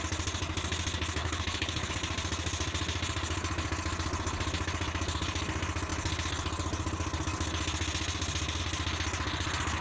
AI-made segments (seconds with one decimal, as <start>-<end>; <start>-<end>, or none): 1.2-1.9